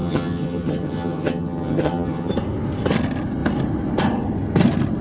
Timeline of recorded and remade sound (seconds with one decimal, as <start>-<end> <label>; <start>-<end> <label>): 0.0-2.3 remade; 2.3-5.0 recorded

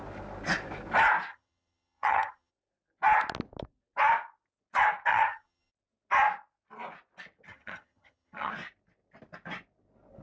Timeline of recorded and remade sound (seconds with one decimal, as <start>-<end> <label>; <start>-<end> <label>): 0.0-1.3 recorded; 1.3-2.5 remade; 2.5-5.1 recorded; 5.1-5.7 remade; 5.7-7.5 recorded; 7.5-8.5 remade; 8.5-10.2 recorded

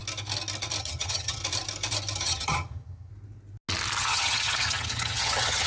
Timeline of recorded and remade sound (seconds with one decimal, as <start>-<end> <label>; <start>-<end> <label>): 0.0-0.8 recorded; 0.8-1.4 remade; 1.4-2.2 recorded; 2.2-3.1 remade; 3.1-4.0 recorded; 4.0-5.7 remade

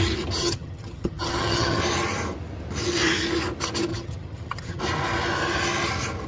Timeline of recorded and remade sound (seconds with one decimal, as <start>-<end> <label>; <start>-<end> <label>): 0.0-0.4 recorded; 0.4-1.8 remade; 1.8-3.9 recorded; 3.9-4.8 remade; 4.8-6.3 recorded

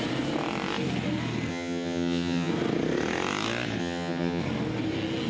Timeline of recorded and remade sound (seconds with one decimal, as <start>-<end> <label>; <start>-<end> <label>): 0.0-1.5 recorded; 1.5-2.5 remade; 2.5-3.8 recorded; 3.8-4.4 remade; 4.4-5.3 recorded

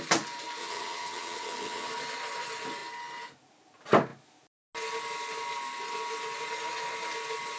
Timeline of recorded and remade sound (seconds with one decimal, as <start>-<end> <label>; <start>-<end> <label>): 0.0-0.6 recorded; 0.6-1.9 remade; 1.9-7.6 recorded